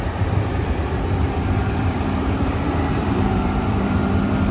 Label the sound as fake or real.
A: fake